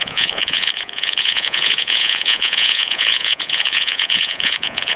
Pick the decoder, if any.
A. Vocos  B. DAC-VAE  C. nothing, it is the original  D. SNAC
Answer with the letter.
A